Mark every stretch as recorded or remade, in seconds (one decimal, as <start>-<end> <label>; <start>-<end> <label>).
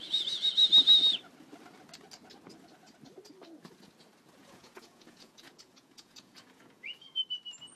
0.0-4.4 recorded; 4.4-7.2 remade; 7.2-7.7 recorded